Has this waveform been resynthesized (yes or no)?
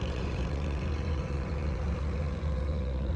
yes